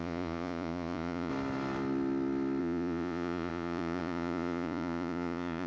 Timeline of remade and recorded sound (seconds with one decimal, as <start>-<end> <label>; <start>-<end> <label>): 0.0-1.3 remade; 1.3-2.6 recorded; 2.6-5.7 remade